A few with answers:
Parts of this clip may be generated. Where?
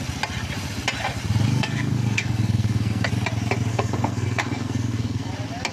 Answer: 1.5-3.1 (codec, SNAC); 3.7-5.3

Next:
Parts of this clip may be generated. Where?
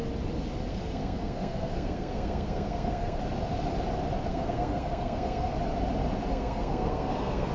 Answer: 0.7-3.2 (codec, SNAC); 4.3-5.5; 6.3-7.5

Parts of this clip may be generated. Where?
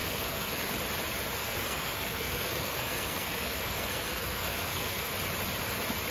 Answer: 0.0-0.7 (codec, SNAC); 1.4-5.1